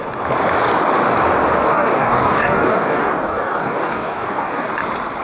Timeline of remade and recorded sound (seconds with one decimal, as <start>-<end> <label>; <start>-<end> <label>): 0.0-1.6 recorded; 1.6-4.7 remade; 4.7-5.2 recorded